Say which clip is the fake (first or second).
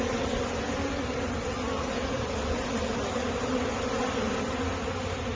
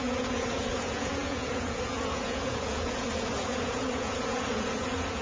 second